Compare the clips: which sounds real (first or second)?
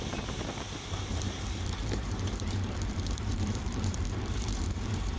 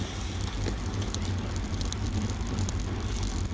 second